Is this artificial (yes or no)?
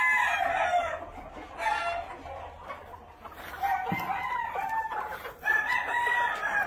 no